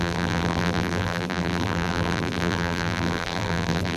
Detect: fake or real fake